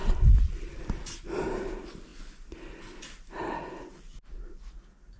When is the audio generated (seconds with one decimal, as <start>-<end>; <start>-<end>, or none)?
none